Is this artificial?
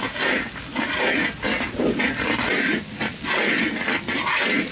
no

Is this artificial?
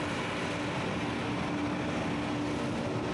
no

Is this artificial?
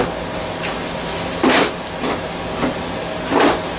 no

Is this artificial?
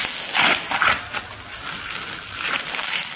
no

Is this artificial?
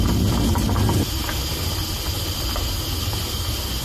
no